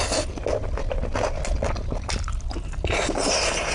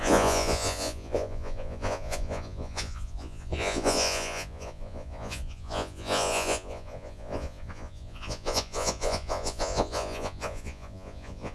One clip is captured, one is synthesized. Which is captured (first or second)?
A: first